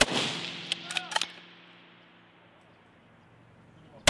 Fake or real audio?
real